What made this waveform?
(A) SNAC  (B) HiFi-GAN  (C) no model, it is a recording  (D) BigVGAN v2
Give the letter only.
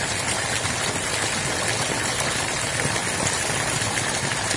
C